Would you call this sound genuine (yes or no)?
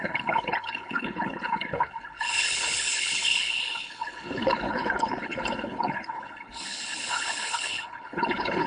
no